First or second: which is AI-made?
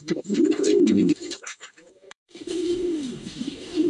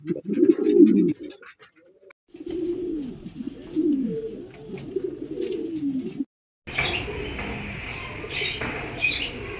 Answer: first